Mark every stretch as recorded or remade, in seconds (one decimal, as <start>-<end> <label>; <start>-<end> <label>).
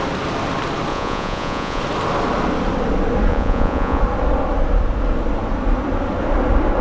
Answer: 0.0-0.9 recorded; 0.9-1.8 remade; 1.8-3.3 recorded; 3.3-4.0 remade; 4.0-6.8 recorded